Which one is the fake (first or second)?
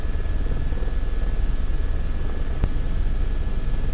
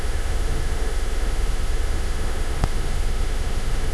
second